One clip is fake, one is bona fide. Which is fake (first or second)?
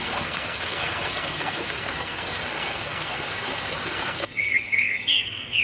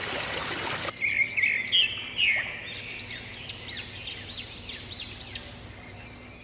first